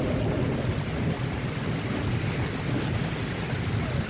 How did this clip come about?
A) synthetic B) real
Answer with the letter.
B